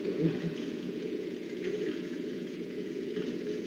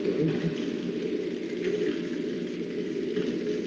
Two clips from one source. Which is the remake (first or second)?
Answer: first